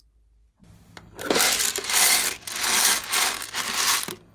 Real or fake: real